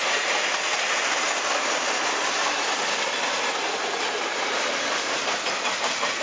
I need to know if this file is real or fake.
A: real